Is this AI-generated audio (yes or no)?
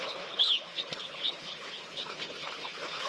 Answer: yes